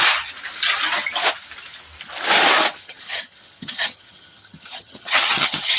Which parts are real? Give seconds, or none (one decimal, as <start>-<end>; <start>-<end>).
0.0-2.8